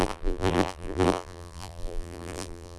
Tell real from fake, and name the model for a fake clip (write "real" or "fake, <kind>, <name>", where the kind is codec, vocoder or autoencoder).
fake, vocoder, BigVGAN v2